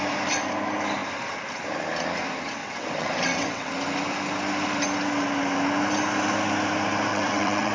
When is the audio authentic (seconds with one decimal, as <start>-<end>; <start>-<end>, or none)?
0.0-2.6; 3.7-7.1